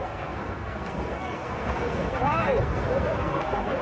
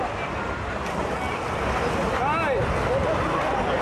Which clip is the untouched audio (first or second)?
second